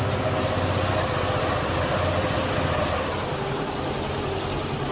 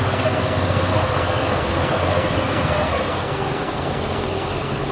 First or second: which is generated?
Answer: second